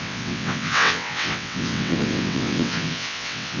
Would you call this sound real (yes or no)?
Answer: no